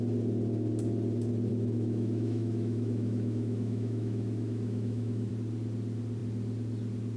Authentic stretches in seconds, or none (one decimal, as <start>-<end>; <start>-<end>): 0.0-1.5; 5.3-7.2